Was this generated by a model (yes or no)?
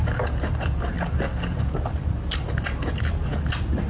no